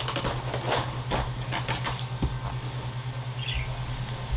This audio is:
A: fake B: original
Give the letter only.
B